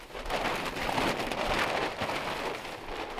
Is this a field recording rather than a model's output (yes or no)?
yes